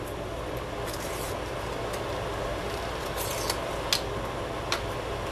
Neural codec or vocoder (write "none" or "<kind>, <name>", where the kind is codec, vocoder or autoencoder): none